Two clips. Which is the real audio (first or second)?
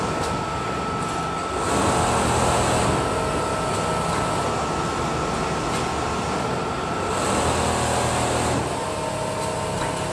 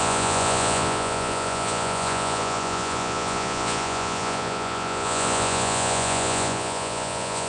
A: first